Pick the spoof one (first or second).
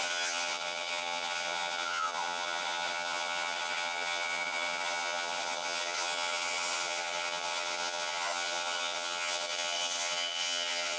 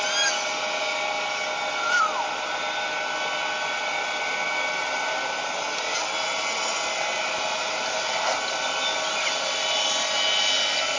first